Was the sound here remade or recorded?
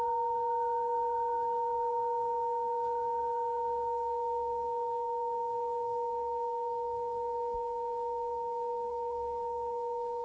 remade